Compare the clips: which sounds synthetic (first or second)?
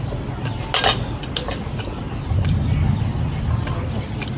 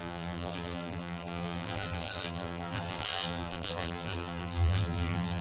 second